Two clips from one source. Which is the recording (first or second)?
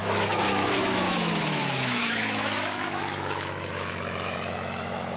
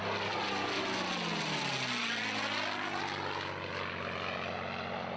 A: second